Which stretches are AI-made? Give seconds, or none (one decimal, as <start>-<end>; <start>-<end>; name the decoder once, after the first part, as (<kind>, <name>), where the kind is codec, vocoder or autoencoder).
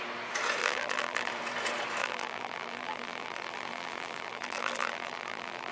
0.6-1.3 (vocoder, BigVGAN v2); 2.0-5.7